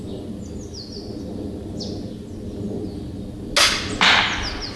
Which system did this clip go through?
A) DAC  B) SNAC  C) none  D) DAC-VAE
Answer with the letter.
C